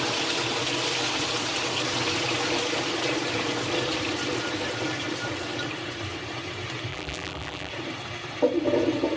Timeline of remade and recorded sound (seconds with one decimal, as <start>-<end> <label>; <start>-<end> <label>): 0.0-6.9 recorded; 6.9-7.7 remade; 7.7-9.2 recorded